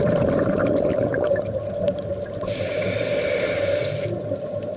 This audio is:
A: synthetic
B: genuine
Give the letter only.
B